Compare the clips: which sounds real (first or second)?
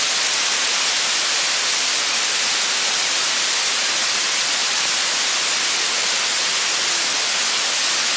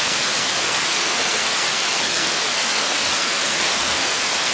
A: first